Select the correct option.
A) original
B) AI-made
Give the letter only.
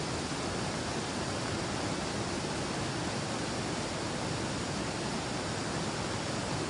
A